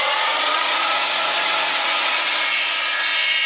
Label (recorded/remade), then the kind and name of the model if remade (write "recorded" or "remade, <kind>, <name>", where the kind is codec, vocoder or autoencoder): remade, vocoder, Vocos